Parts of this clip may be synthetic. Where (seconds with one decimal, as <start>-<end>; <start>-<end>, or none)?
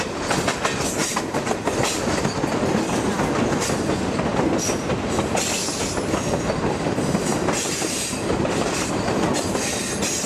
1.0-1.6; 7.3-8.9